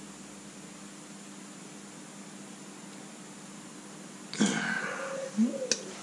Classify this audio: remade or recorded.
recorded